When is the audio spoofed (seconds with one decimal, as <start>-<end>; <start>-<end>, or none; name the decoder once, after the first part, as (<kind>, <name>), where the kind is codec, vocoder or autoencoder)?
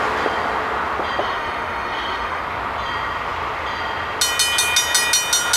1.2-2.4 (autoencoder, DAC-VAE)